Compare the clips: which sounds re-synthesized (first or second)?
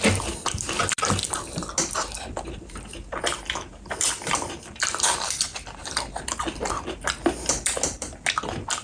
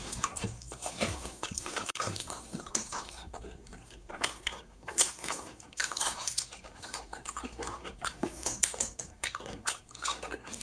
second